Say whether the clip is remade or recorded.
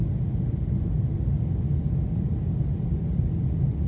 recorded